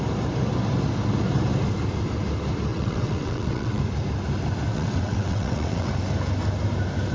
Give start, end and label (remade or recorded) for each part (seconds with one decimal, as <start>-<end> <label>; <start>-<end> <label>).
0.0-2.7 recorded; 2.7-3.8 remade; 3.8-4.7 recorded; 4.7-5.9 remade; 5.9-7.1 recorded